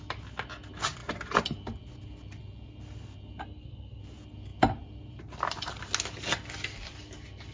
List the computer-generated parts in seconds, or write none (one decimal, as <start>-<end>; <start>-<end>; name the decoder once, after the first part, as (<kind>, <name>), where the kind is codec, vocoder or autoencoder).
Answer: 3.4-4.0 (codec, SNAC)